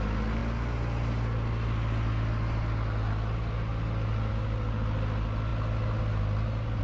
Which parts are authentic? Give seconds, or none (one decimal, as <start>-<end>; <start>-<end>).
0.0-6.8